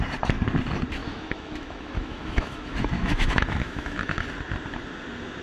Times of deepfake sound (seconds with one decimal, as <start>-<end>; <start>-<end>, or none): 1.0-4.2